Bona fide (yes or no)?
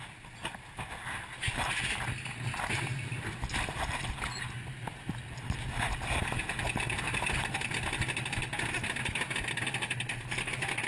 yes